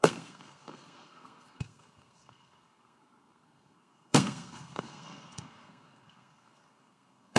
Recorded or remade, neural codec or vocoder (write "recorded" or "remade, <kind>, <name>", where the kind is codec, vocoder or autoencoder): remade, codec, SNAC